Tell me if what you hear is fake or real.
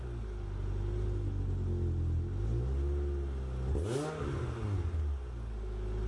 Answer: real